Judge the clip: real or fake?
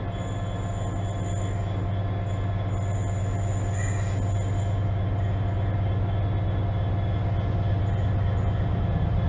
real